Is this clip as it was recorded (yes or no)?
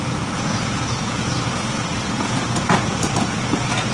no